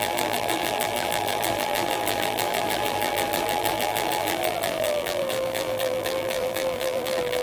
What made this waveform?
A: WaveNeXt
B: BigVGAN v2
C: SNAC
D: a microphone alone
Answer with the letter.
B